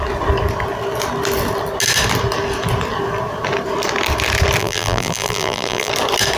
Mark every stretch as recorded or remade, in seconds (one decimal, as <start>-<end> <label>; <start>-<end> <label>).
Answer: 0.0-4.6 recorded; 4.6-5.9 remade; 5.9-6.4 recorded